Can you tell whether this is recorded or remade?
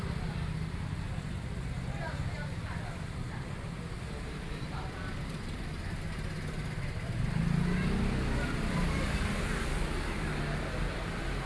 recorded